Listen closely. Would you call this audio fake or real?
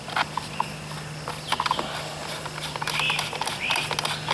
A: real